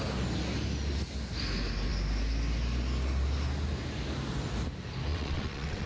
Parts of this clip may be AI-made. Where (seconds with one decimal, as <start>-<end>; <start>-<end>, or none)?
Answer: 5.1-5.9